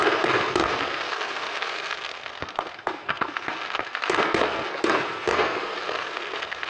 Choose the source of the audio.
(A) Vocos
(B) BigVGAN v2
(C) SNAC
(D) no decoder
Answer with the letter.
C